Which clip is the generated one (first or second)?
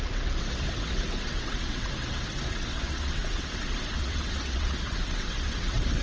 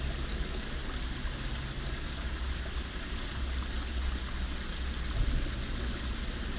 first